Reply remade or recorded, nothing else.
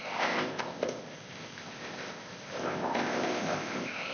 remade